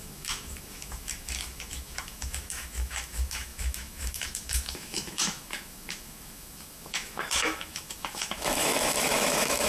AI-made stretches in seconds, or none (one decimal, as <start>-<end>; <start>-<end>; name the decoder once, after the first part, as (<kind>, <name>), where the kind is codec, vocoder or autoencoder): 0.0-9.7 (autoencoder, DAC-VAE)